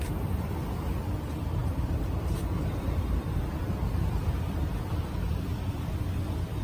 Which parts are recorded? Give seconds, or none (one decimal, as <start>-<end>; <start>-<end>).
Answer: none